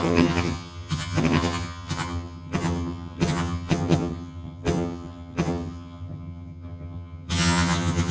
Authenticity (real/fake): fake